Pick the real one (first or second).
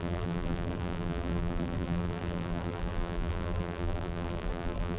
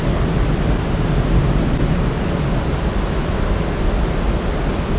second